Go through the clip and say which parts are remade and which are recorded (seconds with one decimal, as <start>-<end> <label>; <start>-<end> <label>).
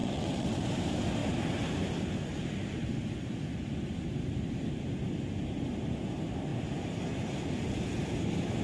0.0-0.6 remade; 0.6-8.6 recorded